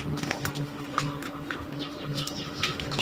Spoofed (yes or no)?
yes